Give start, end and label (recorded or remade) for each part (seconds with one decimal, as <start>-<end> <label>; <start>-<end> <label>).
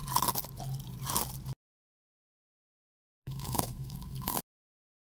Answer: 0.0-2.5 recorded; 2.5-4.4 remade; 4.4-5.1 recorded